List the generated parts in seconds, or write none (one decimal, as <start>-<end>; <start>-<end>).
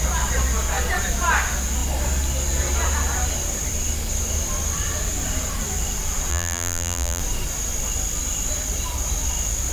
6.3-7.2